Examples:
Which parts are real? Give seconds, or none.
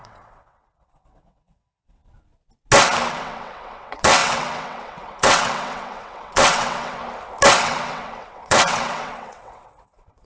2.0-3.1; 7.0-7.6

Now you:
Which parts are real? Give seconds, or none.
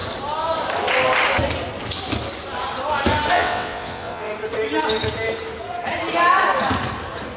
0.0-3.3; 4.3-7.4